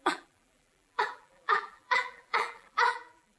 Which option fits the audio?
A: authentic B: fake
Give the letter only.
B